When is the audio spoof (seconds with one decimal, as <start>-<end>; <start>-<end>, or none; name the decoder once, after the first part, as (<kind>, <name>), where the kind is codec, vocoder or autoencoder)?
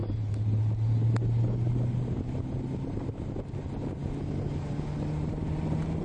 none